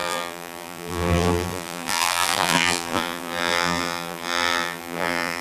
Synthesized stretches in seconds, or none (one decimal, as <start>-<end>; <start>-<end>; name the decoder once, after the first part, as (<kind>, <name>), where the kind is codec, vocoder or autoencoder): 0.0-5.4 (vocoder, BigVGAN v2)